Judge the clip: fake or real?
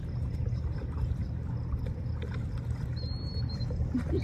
real